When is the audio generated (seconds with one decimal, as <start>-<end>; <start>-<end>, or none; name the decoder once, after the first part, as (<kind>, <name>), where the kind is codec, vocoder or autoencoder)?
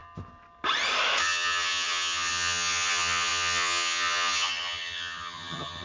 1.2-5.8 (vocoder, HiFi-GAN)